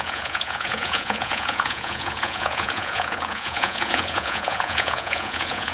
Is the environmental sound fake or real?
fake